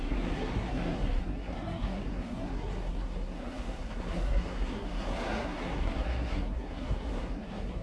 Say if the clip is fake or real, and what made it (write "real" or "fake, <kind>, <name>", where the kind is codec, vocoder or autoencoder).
fake, codec, SNAC